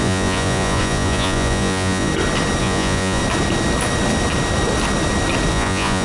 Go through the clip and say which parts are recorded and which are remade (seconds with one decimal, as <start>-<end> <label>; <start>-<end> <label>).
0.0-2.1 remade; 2.1-2.6 recorded; 2.6-3.2 remade; 3.2-5.5 recorded; 5.5-6.0 remade

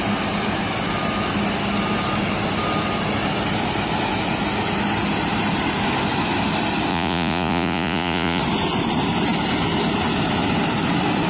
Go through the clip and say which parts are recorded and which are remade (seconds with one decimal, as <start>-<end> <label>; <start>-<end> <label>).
0.0-6.9 recorded; 6.9-8.4 remade; 8.4-11.3 recorded